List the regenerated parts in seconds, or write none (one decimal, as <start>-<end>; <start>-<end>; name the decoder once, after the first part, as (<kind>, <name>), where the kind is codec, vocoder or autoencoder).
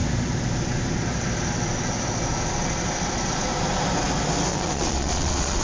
4.5-5.6 (vocoder, WaveNeXt)